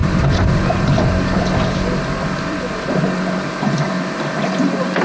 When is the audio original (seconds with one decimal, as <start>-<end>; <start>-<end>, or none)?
none